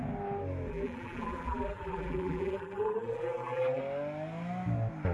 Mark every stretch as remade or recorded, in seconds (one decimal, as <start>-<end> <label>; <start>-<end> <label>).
0.0-0.7 recorded; 0.7-3.8 remade; 3.8-5.1 recorded